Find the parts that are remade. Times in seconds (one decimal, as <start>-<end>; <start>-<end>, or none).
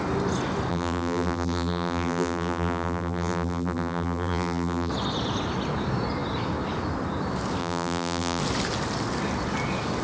0.7-4.9; 7.6-8.4